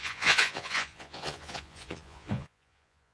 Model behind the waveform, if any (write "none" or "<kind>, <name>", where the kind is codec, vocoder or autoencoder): vocoder, Vocos